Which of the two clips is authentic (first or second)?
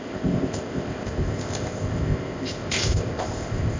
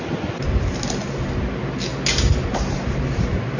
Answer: second